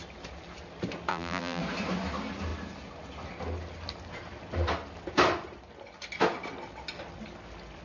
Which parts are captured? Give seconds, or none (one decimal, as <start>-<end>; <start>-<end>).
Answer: 0.0-1.1; 1.6-7.8